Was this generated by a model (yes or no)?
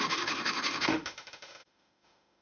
yes